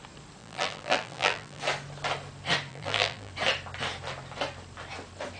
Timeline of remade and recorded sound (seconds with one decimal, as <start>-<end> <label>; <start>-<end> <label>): 0.0-0.4 recorded; 0.4-1.6 remade; 1.6-2.7 recorded; 2.7-3.3 remade; 3.3-5.4 recorded